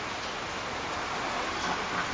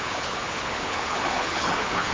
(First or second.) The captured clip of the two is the first